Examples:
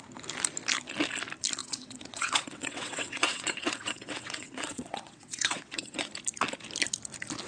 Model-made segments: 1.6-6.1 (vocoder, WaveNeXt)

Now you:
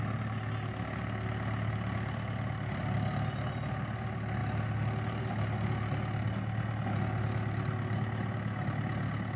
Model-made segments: none

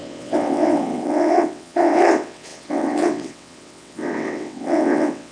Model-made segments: 0.0-5.3 (vocoder, WaveNeXt)

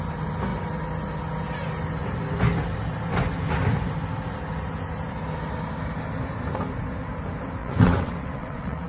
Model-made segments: 7.6-8.9 (vocoder, WaveNeXt)